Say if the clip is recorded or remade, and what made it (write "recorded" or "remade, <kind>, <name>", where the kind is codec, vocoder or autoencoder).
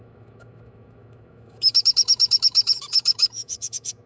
remade, autoencoder, DAC-VAE